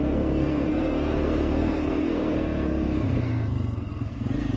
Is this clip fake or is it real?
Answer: fake